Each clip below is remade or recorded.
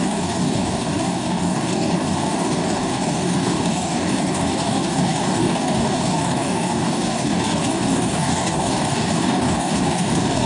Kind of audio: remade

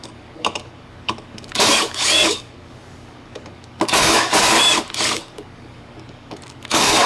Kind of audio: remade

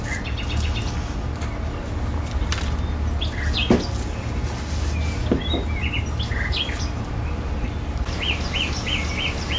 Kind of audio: recorded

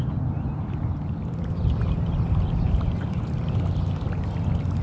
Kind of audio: recorded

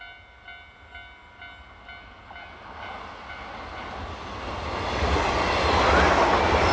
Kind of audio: recorded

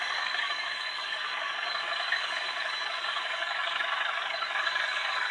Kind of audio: remade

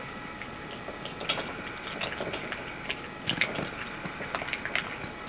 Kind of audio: recorded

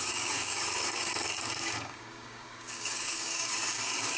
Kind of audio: remade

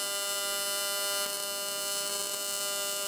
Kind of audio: recorded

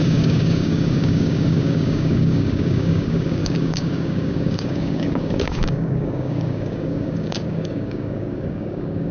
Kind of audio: remade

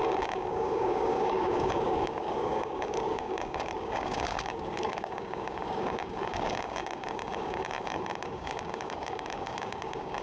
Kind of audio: remade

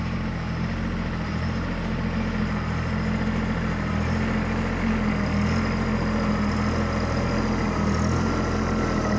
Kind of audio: recorded